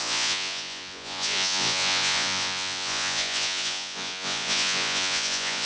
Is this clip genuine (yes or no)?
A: no